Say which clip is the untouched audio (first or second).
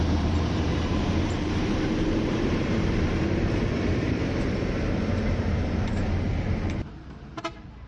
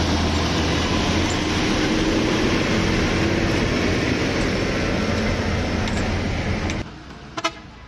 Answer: second